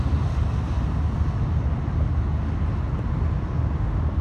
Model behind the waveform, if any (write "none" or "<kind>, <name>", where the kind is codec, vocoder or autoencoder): none